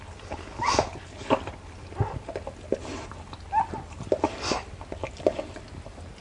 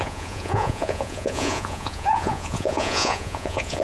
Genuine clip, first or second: first